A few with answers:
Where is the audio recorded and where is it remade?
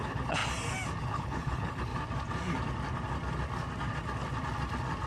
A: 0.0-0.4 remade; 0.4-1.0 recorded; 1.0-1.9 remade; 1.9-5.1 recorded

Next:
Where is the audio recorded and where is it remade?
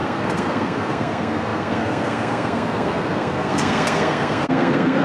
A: 0.0-5.0 remade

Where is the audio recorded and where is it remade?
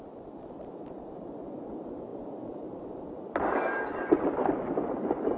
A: 0.0-5.4 recorded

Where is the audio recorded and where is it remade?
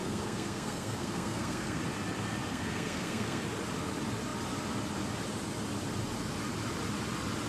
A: 0.0-1.8 remade; 1.8-2.5 recorded; 2.5-3.4 remade; 3.4-7.5 recorded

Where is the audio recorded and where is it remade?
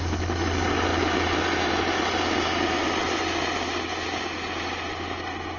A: 0.0-5.6 recorded